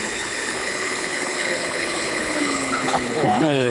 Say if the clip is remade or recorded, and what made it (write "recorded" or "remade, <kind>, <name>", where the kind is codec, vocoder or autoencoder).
remade, codec, HILCodec